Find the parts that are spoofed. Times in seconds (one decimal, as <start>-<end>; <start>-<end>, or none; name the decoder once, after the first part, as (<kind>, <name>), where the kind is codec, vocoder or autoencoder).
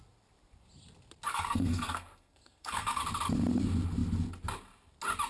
1.3-3.0 (codec, SNAC)